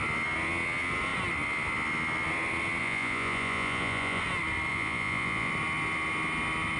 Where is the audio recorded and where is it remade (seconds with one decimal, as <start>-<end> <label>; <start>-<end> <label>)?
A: 0.0-2.8 recorded; 2.8-4.2 remade; 4.2-4.7 recorded; 4.7-5.5 remade; 5.5-6.8 recorded